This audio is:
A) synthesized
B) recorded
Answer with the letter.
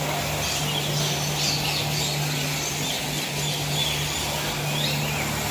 B